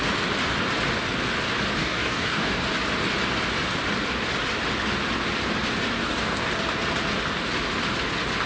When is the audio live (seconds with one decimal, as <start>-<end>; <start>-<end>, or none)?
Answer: 0.0-1.8; 2.6-6.0; 6.5-8.5

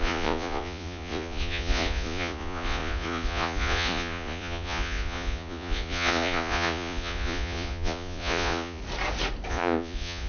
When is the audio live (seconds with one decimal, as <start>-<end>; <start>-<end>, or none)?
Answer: 8.8-9.5